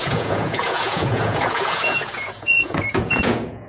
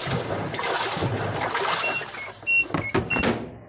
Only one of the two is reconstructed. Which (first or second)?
first